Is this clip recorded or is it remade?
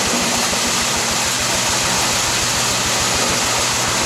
recorded